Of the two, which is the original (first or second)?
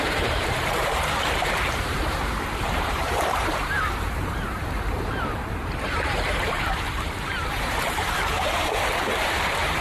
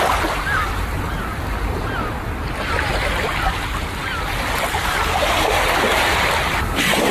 second